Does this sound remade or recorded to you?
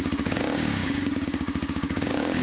remade